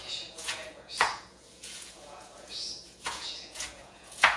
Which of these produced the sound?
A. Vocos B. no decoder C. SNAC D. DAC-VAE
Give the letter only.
A